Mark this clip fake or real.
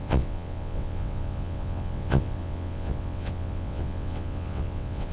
fake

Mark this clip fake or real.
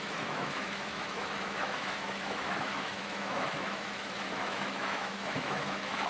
fake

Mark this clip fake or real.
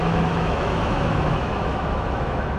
fake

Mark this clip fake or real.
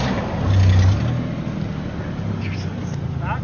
real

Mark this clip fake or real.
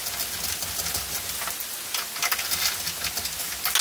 real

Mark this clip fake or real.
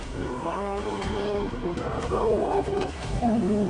fake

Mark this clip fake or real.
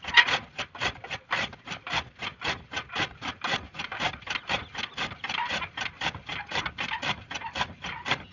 real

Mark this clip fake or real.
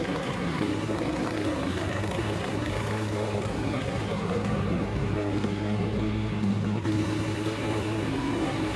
fake